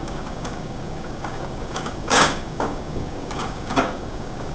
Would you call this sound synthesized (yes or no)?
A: yes